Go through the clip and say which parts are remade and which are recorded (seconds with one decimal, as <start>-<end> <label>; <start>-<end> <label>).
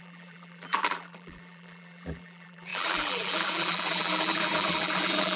0.0-5.4 remade